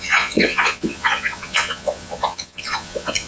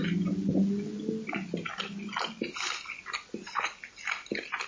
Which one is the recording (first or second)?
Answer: second